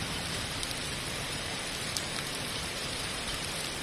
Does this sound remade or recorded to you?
remade